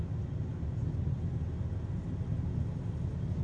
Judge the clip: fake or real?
real